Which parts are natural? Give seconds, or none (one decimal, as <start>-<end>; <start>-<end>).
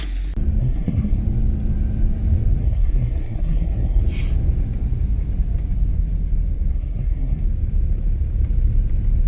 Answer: 0.0-0.6; 1.2-2.6; 4.0-6.7; 7.4-9.3